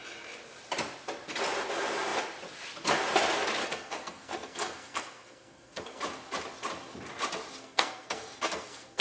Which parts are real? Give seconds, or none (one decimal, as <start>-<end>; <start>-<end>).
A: 0.0-3.6; 6.0-7.6